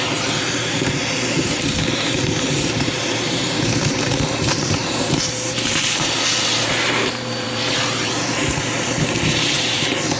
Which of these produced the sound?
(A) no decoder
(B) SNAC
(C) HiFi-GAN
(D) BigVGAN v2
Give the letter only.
D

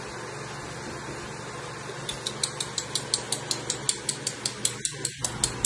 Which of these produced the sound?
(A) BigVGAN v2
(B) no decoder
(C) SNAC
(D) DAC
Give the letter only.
B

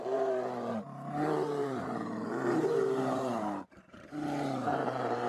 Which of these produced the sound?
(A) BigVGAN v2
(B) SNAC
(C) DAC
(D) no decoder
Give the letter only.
A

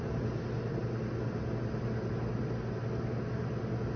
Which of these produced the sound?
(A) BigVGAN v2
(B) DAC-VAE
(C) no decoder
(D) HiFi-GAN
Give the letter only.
C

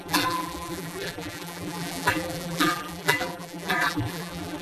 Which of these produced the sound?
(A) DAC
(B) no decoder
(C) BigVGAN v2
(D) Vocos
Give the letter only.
C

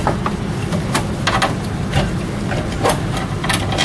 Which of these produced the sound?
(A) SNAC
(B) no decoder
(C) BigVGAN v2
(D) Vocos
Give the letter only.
B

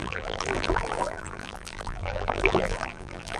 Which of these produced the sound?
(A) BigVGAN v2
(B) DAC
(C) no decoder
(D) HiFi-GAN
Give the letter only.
A